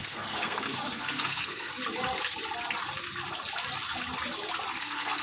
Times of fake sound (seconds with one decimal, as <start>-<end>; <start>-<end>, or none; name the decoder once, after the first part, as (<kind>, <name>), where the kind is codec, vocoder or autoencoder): 0.0-1.7 (codec, SNAC); 4.8-5.2